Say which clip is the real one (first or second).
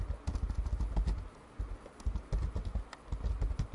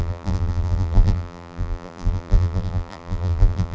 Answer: first